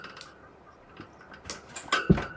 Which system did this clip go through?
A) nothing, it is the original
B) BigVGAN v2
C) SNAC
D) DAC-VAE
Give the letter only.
A